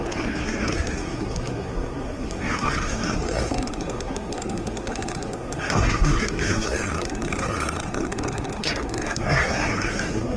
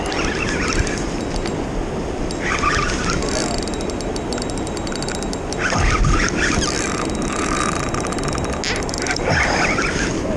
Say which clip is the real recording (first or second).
second